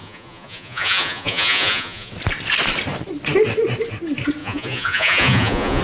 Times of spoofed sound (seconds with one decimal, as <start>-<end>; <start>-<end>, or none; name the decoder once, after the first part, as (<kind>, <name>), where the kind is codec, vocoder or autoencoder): 0.0-2.1 (vocoder, Vocos); 4.4-5.8